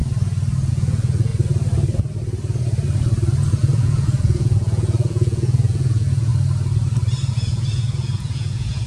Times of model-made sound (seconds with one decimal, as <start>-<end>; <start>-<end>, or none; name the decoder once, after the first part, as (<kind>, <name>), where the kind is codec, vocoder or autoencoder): 0.7-1.3 (vocoder, Vocos); 3.5-6.3; 7.3-8.9